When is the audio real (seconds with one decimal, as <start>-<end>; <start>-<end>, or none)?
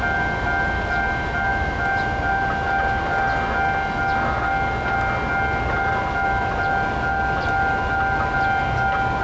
0.0-9.2